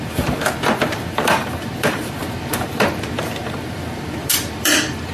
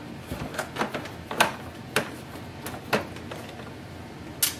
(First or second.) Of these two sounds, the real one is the second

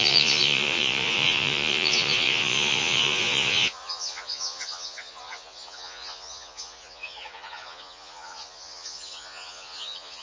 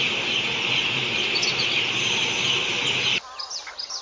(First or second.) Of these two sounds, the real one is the second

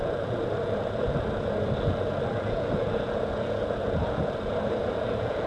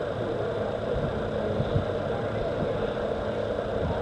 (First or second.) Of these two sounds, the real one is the second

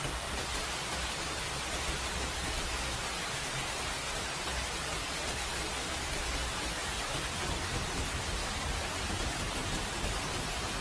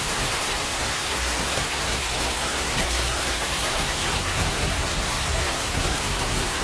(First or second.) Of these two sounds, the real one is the first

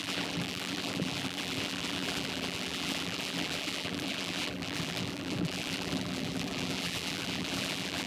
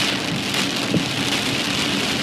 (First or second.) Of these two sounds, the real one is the second